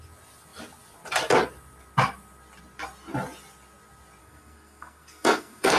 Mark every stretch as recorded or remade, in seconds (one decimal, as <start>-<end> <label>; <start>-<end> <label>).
0.0-4.2 recorded; 4.2-5.8 remade